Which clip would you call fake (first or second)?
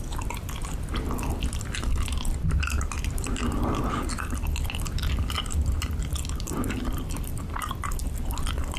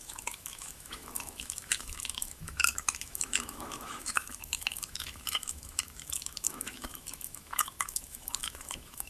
second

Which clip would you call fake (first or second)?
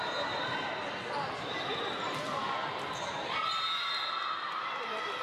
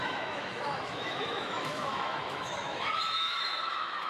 second